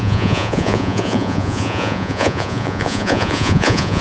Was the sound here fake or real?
fake